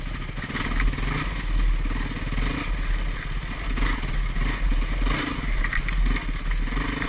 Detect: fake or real real